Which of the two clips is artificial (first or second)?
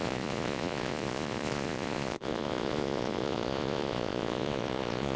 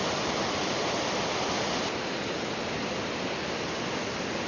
first